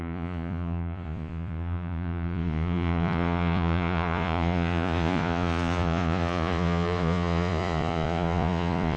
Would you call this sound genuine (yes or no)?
no